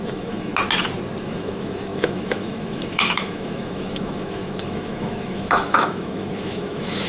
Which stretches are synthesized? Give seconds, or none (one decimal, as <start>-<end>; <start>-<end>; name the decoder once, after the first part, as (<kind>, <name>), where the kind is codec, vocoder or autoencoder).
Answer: 0.0-0.5 (autoencoder, DAC-VAE); 1.2-7.1